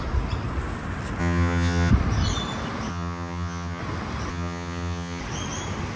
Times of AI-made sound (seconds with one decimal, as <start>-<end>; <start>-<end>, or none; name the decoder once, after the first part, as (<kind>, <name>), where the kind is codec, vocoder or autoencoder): 1.2-1.9 (vocoder, HiFi-GAN); 2.9-3.8; 4.3-5.2